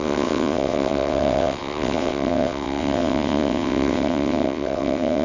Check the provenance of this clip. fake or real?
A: fake